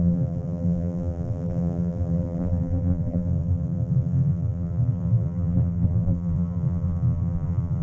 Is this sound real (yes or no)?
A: no